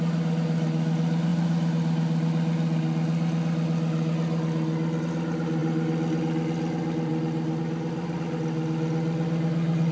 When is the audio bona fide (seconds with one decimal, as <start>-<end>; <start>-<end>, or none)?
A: 0.0-9.9